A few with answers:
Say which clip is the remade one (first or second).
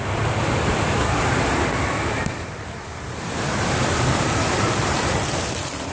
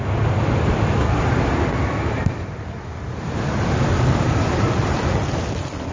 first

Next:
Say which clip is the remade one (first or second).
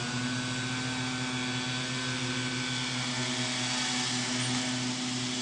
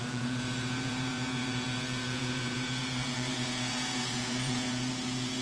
second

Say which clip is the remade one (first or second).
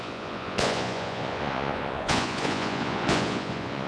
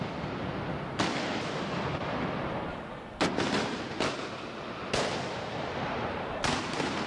first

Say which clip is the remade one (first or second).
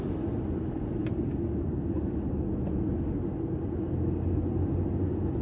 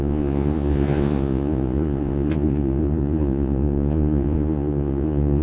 second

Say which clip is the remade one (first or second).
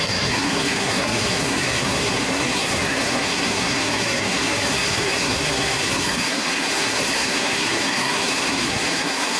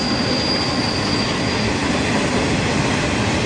first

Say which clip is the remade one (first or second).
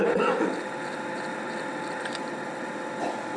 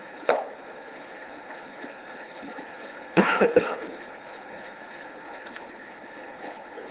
second